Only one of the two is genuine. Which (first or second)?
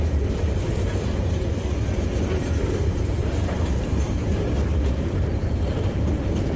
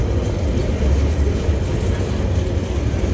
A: second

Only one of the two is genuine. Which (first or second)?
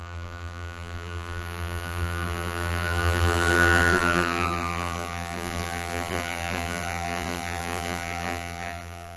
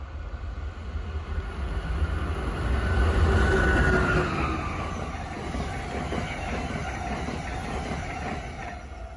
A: second